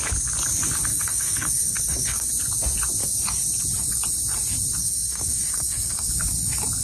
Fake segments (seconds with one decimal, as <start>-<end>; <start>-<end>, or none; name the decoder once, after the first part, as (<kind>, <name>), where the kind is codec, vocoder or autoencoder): 0.9-2.3 (codec, SNAC); 4.8-6.1